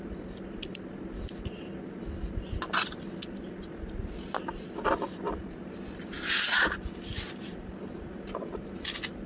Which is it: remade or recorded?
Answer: recorded